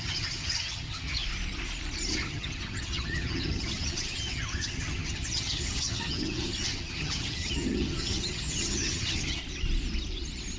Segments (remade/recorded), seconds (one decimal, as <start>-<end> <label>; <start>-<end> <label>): 0.0-1.2 remade; 1.2-2.1 recorded; 2.1-9.4 remade; 9.4-10.6 recorded